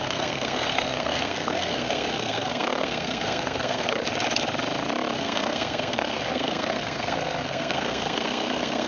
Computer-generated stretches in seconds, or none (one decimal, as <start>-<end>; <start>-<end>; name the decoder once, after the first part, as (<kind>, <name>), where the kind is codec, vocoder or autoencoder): 0.0-4.0 (codec, SNAC); 5.2-8.9